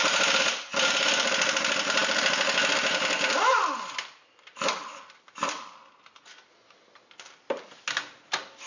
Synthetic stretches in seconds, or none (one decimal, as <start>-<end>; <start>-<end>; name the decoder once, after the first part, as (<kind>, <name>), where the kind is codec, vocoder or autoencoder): none